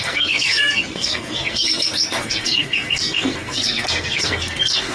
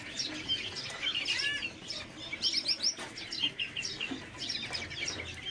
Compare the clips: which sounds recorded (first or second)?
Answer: second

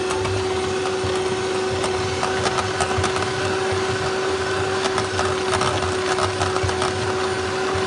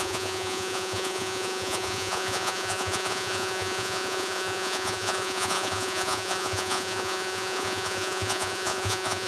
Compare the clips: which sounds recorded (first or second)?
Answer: first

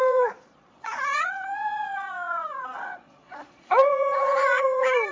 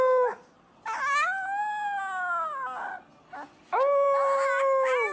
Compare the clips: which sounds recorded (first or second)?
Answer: second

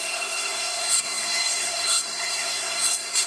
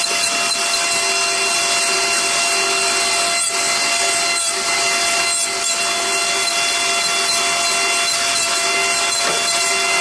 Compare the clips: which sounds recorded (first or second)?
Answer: second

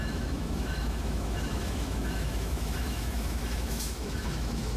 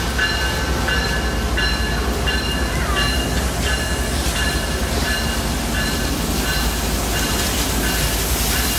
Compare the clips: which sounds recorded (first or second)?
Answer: second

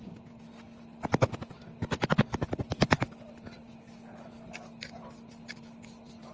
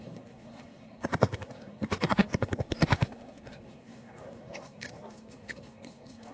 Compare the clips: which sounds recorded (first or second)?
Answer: first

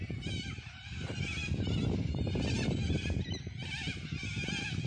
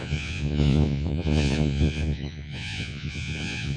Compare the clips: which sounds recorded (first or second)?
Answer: first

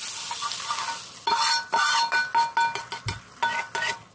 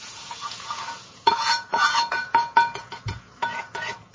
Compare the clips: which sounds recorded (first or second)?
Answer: first